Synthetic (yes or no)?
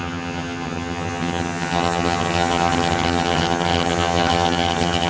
yes